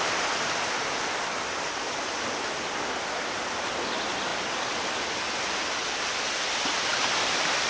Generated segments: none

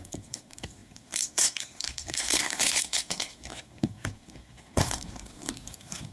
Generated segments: 0.0-6.1 (codec, SNAC)

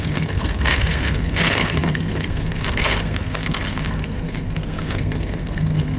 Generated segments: 0.0-6.0 (codec, SNAC)

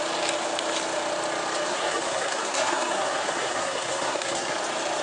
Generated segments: 1.7-4.6 (codec, SNAC)